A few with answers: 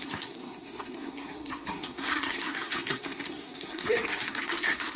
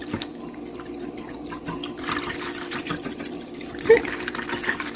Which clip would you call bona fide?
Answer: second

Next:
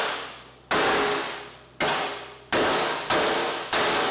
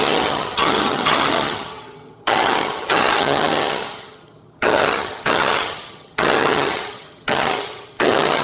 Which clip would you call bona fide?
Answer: first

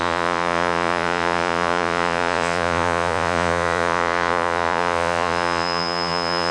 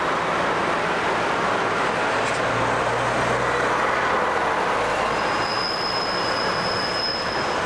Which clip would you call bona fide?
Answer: second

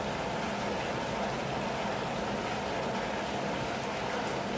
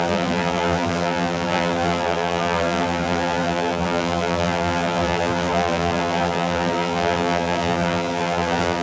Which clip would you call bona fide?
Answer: first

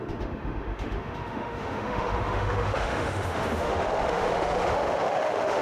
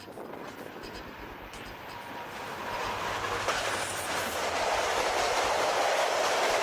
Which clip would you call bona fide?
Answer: second